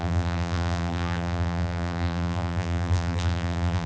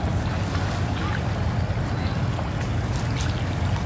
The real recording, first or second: second